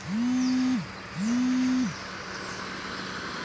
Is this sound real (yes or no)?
yes